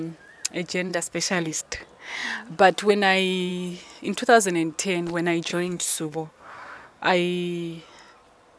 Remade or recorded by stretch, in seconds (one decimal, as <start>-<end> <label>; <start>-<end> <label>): 0.0-0.9 recorded; 0.9-1.6 remade; 1.6-5.5 recorded; 5.5-7.0 remade; 7.0-8.6 recorded